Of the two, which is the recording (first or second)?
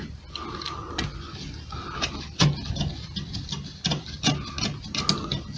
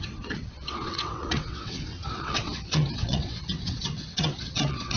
first